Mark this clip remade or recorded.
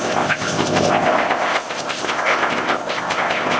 remade